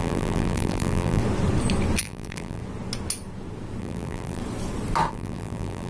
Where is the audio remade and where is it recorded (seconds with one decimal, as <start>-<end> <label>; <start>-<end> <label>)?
0.0-1.2 remade; 1.2-2.0 recorded; 2.0-2.6 remade; 2.6-3.8 recorded; 3.8-4.4 remade; 4.4-5.1 recorded; 5.1-5.9 remade